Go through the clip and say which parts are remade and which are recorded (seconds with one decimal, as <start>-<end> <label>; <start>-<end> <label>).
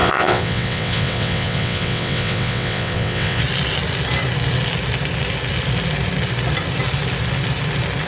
0.0-3.4 remade; 3.4-8.1 recorded